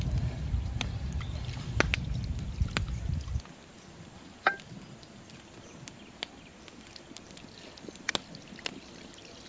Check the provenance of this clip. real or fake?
real